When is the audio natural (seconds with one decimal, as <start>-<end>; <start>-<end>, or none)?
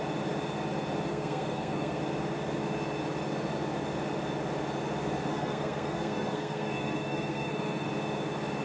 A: 0.0-1.1; 2.0-5.3; 7.9-8.6